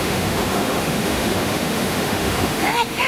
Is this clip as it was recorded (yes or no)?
no